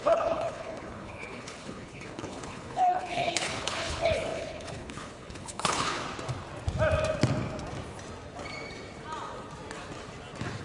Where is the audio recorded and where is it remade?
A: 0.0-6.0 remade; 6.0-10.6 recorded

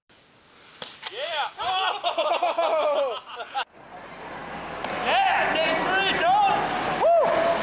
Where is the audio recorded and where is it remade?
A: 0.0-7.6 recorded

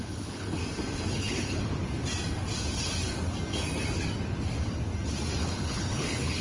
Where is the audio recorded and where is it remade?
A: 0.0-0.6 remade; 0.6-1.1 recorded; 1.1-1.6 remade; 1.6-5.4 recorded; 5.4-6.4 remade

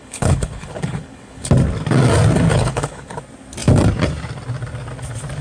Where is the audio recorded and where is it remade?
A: 0.0-1.5 remade; 1.5-2.5 recorded; 2.5-3.2 remade; 3.2-5.4 recorded